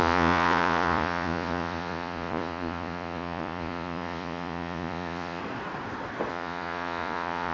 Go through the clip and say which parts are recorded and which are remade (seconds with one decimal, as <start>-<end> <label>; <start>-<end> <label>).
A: 0.0-5.4 remade; 5.4-6.3 recorded; 6.3-7.5 remade